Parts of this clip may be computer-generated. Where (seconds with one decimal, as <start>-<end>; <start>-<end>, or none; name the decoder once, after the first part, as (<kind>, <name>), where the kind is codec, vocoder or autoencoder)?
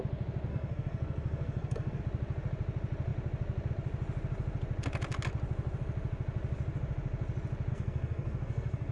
0.5-2.0 (codec, SNAC); 7.7-8.9